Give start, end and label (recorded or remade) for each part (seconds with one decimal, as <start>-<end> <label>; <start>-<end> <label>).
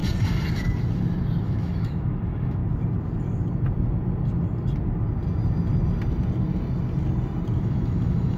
0.0-1.4 recorded; 1.4-2.6 remade; 2.6-7.6 recorded; 7.6-8.4 remade